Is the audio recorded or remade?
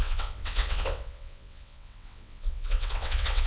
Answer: remade